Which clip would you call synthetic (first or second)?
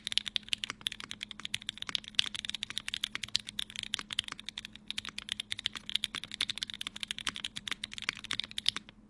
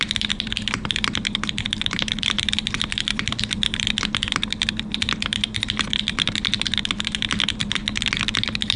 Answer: second